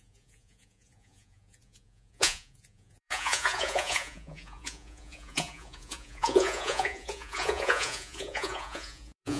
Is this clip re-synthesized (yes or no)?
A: yes